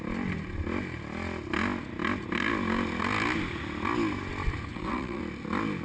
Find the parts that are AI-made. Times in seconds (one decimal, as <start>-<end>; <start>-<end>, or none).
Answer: 4.7-5.2